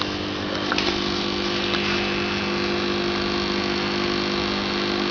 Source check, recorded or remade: recorded